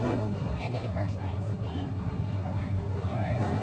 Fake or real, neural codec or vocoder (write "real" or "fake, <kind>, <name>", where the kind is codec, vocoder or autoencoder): fake, codec, SNAC